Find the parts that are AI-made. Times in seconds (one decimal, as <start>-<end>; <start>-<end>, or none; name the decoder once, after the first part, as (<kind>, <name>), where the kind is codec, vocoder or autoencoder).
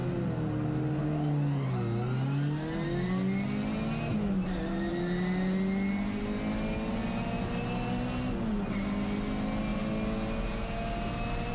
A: none